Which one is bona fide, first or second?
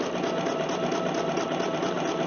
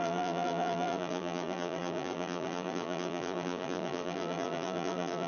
first